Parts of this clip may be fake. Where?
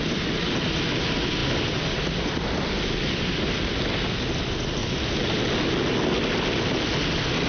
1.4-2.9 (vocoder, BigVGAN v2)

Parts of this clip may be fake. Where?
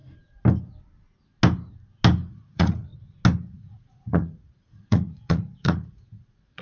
2.3-2.9 (vocoder, Vocos); 3.5-6.6